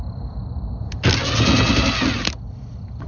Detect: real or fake real